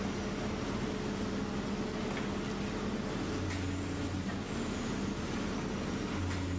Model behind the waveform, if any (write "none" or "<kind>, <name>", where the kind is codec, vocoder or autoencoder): none